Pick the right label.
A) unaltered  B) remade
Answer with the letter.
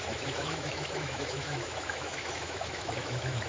B